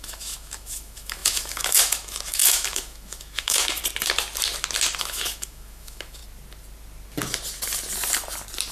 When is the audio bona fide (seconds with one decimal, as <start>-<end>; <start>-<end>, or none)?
3.8-5.0; 6.2-8.7